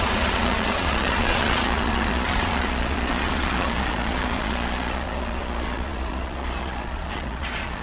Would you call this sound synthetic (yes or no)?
yes